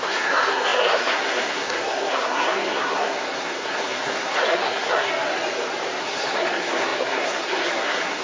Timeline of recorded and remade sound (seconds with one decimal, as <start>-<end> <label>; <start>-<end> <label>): 0.0-5.1 remade; 5.1-6.0 recorded; 6.0-8.2 remade